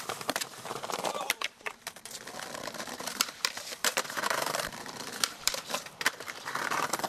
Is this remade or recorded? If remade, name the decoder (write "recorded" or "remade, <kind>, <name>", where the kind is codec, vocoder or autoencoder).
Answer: remade, vocoder, BigVGAN v2